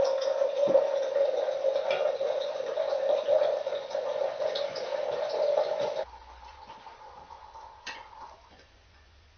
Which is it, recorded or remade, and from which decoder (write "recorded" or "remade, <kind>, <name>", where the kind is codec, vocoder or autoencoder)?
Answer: remade, vocoder, Vocos